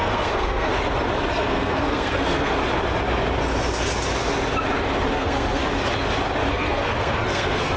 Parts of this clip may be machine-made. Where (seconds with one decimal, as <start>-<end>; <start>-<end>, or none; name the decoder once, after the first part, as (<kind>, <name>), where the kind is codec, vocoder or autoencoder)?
0.0-0.7 (codec, SNAC); 1.3-2.6; 5.1-5.6; 6.5-7.8